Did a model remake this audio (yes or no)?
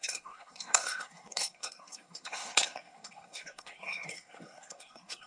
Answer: yes